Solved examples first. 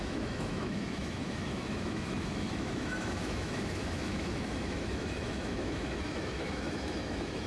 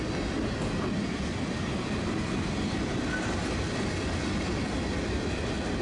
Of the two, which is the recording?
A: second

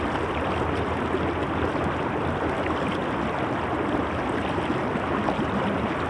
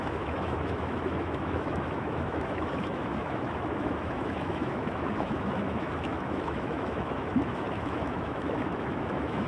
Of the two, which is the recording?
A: first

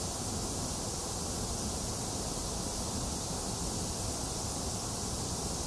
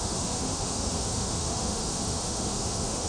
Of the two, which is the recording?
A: first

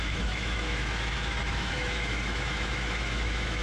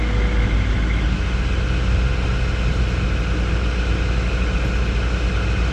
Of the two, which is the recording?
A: second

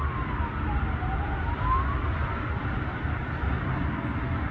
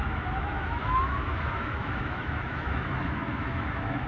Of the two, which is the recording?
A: first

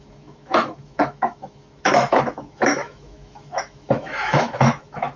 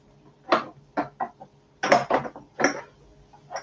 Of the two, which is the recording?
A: second